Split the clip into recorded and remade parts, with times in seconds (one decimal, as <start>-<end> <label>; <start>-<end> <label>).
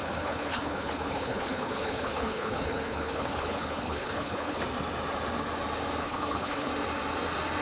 0.0-4.6 remade; 4.6-6.0 recorded; 6.0-6.7 remade; 6.7-7.6 recorded